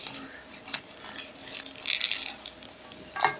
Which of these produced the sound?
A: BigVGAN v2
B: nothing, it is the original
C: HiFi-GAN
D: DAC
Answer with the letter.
B